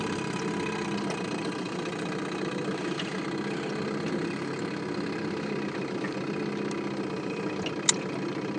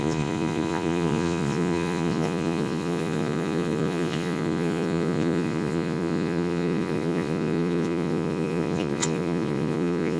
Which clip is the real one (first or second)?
first